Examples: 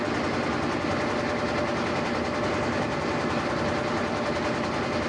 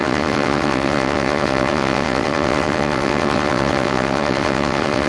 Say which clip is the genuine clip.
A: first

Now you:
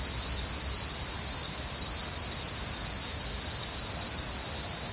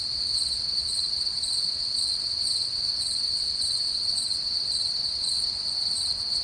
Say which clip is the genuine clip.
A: first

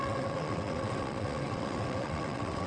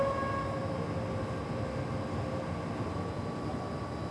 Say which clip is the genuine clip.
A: second